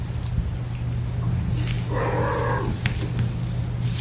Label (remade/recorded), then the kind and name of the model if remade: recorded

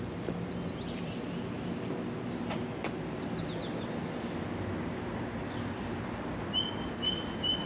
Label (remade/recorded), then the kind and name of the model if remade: recorded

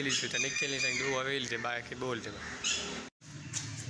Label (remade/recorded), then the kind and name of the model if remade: recorded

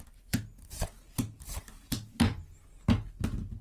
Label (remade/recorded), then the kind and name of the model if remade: recorded